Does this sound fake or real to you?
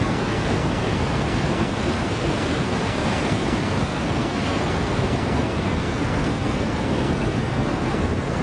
fake